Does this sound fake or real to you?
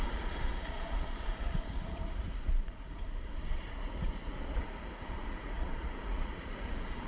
fake